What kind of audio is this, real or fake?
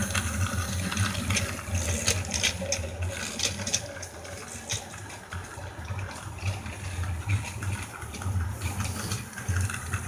real